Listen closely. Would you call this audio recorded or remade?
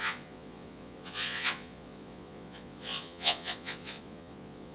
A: remade